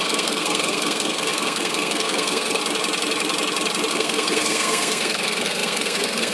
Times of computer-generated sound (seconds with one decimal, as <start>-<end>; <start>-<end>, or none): 0.0-2.6; 3.9-6.3